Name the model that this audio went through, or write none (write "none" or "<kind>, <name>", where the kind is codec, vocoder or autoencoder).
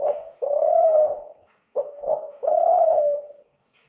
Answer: codec, DAC